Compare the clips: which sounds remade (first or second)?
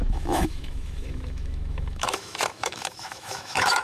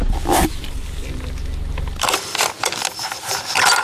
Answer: first